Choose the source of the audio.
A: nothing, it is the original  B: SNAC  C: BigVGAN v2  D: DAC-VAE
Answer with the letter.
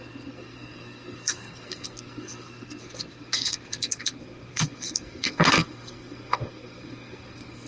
B